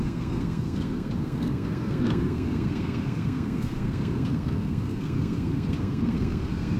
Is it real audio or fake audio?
fake